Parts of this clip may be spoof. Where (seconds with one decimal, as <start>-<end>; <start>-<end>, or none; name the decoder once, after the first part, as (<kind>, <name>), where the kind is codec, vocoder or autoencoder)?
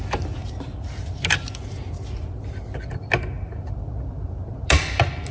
none